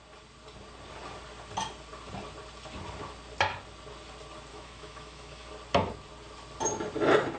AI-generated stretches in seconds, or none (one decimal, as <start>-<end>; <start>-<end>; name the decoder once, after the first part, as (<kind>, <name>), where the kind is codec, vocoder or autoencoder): 4.5-5.5 (autoencoder, DAC-VAE)